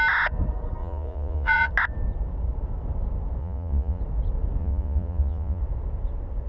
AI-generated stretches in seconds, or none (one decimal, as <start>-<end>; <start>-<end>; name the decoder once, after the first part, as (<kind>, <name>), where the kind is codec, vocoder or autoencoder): 0.8-1.7 (vocoder, Vocos); 3.4-4.0; 4.6-5.6